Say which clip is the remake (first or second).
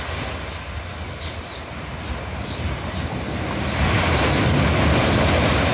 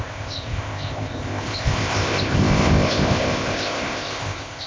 second